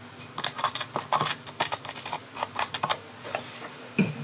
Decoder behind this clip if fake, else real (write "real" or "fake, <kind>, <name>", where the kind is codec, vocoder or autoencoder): real